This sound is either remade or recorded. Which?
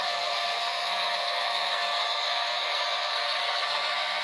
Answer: remade